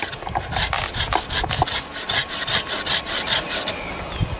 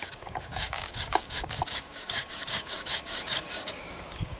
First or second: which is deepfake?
second